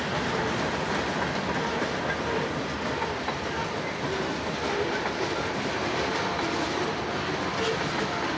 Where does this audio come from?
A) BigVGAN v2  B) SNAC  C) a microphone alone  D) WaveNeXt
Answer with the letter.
C